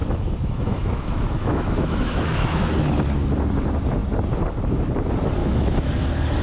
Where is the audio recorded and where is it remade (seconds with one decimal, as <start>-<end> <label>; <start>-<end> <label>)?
0.0-2.7 remade; 2.7-5.4 recorded; 5.4-5.9 remade; 5.9-6.4 recorded